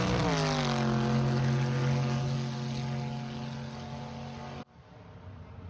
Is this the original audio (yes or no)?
yes